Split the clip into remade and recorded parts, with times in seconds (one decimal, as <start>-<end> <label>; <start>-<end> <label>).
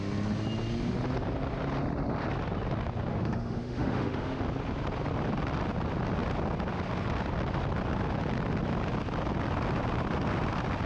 0.0-3.1 recorded; 3.1-4.4 remade; 4.4-10.9 recorded